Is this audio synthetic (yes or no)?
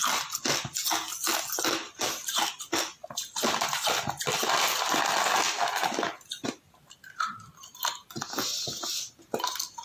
no